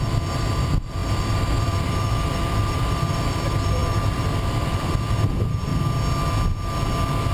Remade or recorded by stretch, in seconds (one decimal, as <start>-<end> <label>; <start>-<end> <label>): 0.0-5.7 remade; 5.7-7.3 recorded